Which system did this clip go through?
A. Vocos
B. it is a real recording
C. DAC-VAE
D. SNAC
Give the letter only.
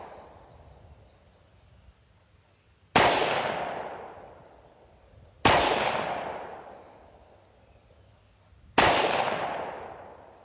B